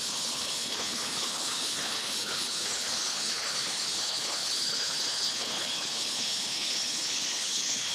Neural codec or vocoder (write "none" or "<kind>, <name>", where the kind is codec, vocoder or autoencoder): codec, HILCodec